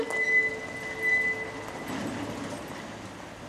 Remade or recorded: recorded